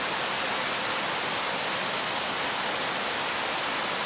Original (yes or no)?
yes